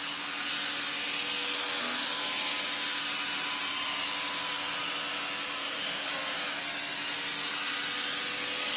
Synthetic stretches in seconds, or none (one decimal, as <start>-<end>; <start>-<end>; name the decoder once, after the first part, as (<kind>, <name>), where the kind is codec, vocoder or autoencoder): 5.6-6.1 (autoencoder, DAC-VAE)